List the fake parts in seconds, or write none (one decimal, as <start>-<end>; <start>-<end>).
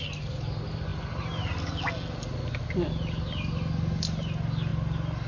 none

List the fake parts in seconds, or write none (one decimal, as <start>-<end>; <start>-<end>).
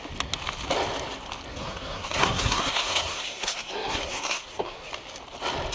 1.5-4.9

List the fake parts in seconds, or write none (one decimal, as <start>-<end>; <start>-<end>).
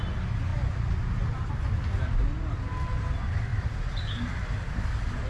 none